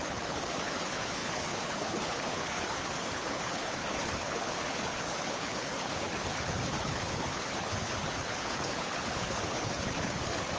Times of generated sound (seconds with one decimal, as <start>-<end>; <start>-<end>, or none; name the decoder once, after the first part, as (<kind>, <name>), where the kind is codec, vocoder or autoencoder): 0.0-10.6 (codec, HILCodec)